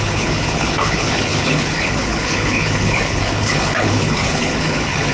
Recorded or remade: remade